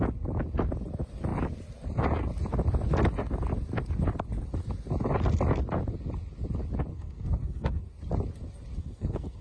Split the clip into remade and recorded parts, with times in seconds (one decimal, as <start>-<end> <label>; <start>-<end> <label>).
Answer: 0.0-6.9 recorded; 6.9-7.9 remade; 7.9-8.8 recorded; 8.8-9.4 remade